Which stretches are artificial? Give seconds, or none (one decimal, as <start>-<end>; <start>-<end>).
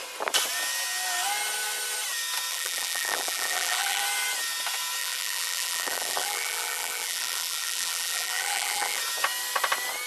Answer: 2.5-4.0; 5.0-9.0